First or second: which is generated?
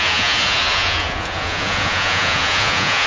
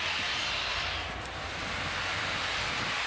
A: first